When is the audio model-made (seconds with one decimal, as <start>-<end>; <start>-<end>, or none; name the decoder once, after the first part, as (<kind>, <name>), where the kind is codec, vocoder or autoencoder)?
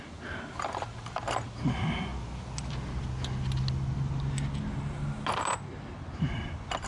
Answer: none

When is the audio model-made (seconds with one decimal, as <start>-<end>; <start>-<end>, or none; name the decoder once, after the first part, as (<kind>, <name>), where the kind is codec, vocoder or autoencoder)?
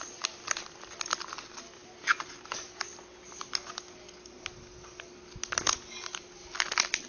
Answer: none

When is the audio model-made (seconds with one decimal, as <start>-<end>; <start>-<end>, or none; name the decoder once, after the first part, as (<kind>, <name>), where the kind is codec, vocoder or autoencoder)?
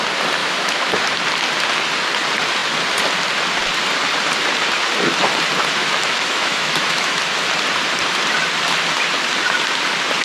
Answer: 0.4-0.9 (autoencoder, DAC-VAE); 5.8-7.2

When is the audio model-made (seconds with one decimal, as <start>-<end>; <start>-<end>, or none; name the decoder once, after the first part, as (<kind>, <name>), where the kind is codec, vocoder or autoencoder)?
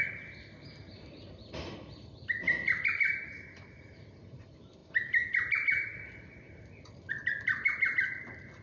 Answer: none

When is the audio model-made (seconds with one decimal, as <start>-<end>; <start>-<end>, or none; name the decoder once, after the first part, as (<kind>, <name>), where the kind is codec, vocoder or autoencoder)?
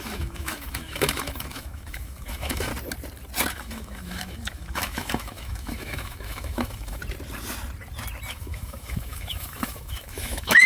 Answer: 0.0-2.7 (autoencoder, DAC-VAE); 3.5-7.0; 8.3-10.7